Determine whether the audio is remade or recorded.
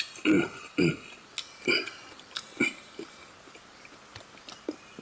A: recorded